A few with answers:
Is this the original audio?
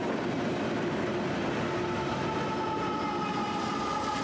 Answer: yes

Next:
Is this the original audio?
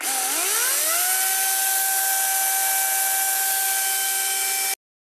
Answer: yes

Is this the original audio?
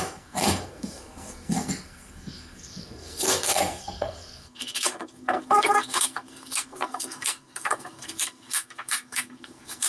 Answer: no